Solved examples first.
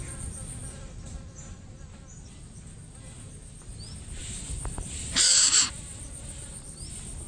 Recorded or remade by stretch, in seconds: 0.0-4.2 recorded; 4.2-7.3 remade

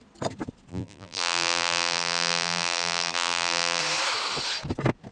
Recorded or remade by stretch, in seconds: 0.0-0.7 recorded; 0.7-3.8 remade; 3.8-5.1 recorded